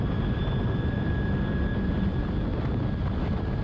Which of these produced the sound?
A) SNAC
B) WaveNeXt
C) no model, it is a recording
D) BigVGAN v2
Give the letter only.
C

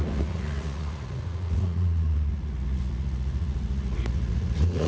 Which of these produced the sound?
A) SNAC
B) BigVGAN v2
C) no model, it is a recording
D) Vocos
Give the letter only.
D